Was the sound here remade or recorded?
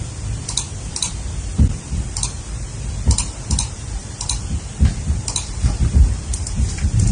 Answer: remade